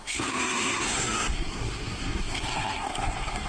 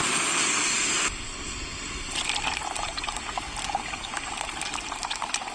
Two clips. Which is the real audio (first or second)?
second